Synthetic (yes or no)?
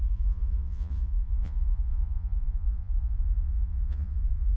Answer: yes